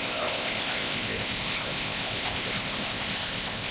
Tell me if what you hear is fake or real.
fake